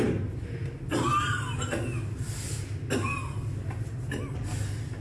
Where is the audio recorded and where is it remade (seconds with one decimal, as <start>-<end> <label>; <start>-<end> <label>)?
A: 0.0-5.0 recorded